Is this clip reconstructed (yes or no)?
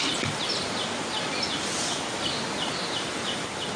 no